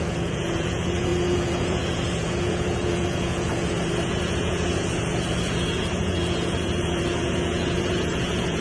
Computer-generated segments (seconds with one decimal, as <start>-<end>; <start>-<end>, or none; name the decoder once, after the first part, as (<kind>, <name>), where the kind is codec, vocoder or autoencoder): 0.0-8.6 (vocoder, Vocos)